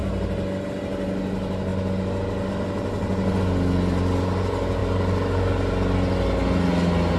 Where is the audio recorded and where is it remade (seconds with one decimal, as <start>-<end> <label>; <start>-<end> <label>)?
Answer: 0.0-7.2 recorded